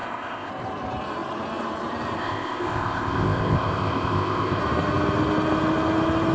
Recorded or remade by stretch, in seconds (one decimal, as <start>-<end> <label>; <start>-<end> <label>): 0.0-0.5 remade; 0.5-2.2 recorded; 2.2-4.6 remade; 4.6-6.3 recorded